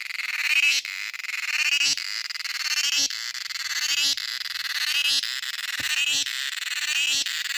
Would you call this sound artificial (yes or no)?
no